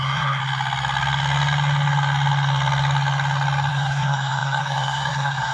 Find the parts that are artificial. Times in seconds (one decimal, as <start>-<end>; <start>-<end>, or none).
0.0-0.4; 3.7-5.5